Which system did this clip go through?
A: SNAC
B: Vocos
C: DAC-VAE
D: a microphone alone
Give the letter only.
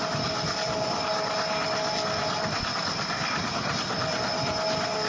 D